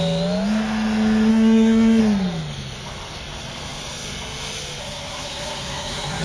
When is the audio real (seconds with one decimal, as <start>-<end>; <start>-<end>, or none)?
0.0-1.3; 2.0-4.8